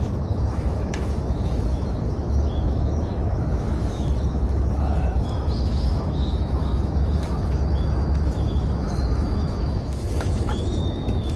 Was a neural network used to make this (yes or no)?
yes